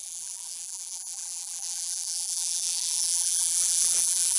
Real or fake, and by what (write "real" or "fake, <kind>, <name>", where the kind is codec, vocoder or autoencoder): fake, vocoder, BigVGAN v2